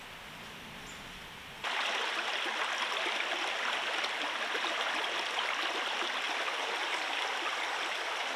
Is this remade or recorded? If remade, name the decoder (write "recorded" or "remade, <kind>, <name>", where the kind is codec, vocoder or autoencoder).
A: recorded